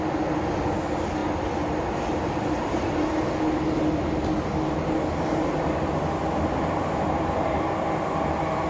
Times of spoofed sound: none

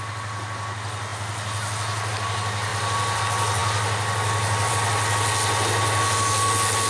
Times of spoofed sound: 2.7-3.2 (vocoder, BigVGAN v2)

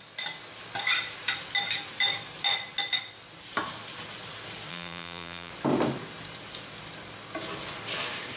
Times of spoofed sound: 4.7-5.5 (vocoder, BigVGAN v2)

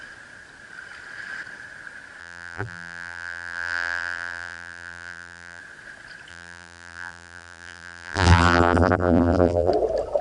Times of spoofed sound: 2.2-5.6 (vocoder, BigVGAN v2); 6.3-9.7

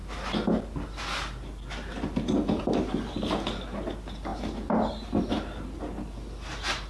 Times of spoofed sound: none